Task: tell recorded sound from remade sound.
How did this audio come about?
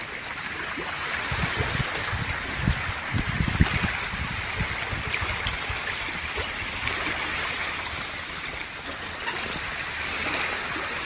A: recorded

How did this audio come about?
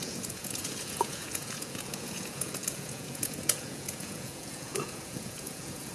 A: remade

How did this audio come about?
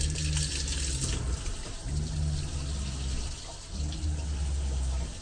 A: recorded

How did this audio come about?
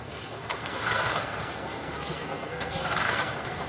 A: remade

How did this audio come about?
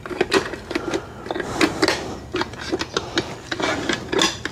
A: recorded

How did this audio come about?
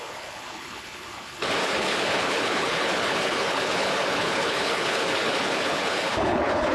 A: remade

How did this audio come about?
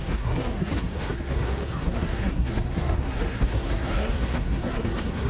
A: remade